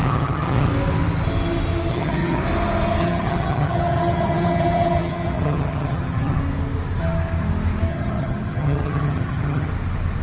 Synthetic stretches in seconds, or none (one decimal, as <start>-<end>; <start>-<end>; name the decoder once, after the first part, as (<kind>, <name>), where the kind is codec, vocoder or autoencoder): 0.0-0.7 (vocoder, HiFi-GAN); 1.9-2.4; 3.0-6.4; 7.9-9.7